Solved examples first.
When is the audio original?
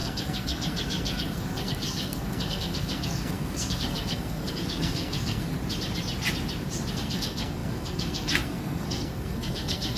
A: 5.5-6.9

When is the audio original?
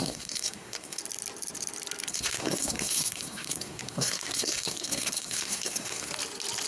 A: 1.0-2.1; 6.1-6.7